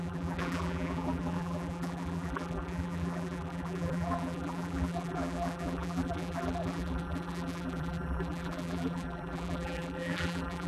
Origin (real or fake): fake